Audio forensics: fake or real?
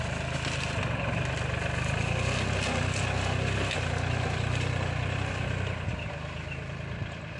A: real